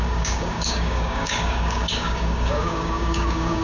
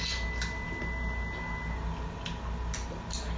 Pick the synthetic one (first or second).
first